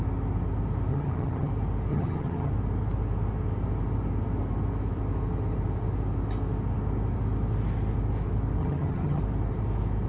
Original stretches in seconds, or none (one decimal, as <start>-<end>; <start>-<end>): 0.0-0.9; 1.5-1.9; 2.5-8.6; 9.2-10.1